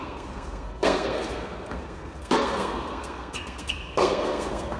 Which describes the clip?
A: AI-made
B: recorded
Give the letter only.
A